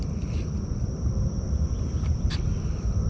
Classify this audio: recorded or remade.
recorded